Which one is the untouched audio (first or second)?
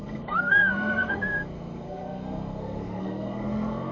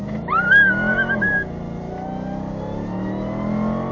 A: second